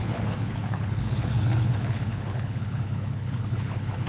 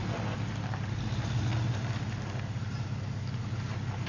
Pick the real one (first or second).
second